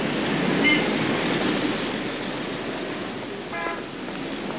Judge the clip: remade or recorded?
recorded